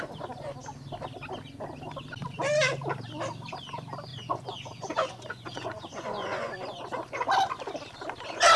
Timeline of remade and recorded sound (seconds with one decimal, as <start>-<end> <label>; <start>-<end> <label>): 0.0-4.1 recorded; 4.1-7.2 remade; 7.2-8.6 recorded